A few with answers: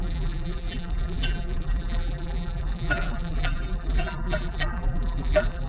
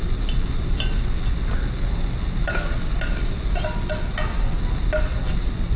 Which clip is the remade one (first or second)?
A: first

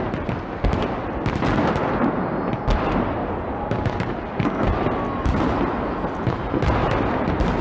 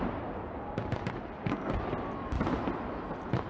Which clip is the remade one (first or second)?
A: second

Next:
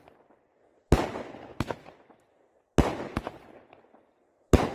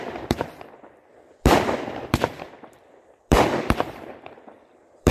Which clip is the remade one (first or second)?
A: second